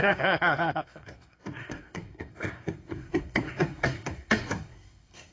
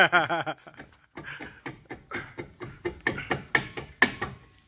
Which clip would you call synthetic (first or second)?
first